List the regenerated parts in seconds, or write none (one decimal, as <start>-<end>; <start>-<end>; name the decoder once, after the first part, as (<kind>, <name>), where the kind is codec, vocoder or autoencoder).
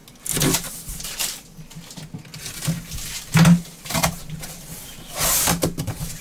none